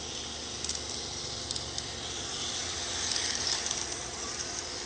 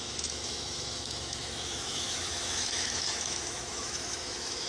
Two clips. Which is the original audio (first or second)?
first